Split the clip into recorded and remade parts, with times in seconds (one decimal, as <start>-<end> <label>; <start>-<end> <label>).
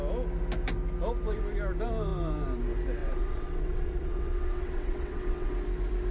0.0-3.0 recorded; 3.0-5.5 remade; 5.5-6.1 recorded